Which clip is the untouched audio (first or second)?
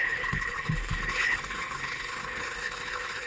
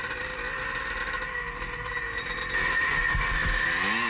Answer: second